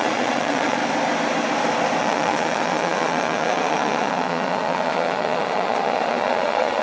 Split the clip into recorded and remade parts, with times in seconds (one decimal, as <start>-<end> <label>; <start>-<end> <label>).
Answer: 0.0-0.8 remade; 0.8-2.0 recorded; 2.0-6.8 remade

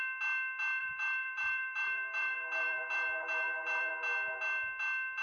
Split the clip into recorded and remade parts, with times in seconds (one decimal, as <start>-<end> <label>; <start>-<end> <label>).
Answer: 0.0-0.8 recorded; 0.8-3.9 remade; 3.9-5.2 recorded

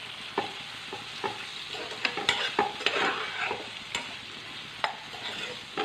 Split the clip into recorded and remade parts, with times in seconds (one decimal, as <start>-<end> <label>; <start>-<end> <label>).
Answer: 0.0-1.5 recorded; 1.5-2.1 remade; 2.1-5.8 recorded

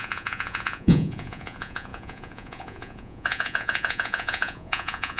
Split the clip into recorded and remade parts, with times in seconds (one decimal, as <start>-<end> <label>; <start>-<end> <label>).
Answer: 0.0-5.2 remade

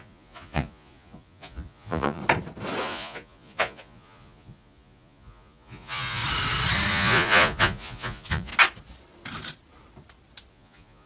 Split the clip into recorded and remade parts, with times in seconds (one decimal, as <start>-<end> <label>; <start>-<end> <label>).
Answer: 0.0-2.2 remade; 2.2-2.8 recorded; 2.8-6.2 remade; 6.2-6.9 recorded; 6.9-8.5 remade; 8.5-10.5 recorded; 10.5-11.1 remade

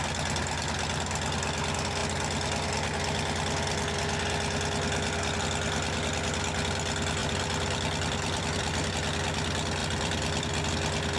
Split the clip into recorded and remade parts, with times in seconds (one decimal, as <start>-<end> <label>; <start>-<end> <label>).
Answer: 0.0-7.2 recorded; 7.2-8.9 remade; 8.9-9.8 recorded; 9.8-10.7 remade; 10.7-11.2 recorded